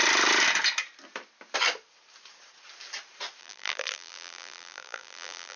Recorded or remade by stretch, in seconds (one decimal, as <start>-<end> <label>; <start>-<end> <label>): 0.0-3.4 recorded; 3.4-5.6 remade